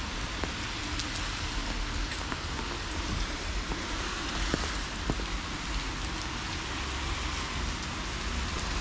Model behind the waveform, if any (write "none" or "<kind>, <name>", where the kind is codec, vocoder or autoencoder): none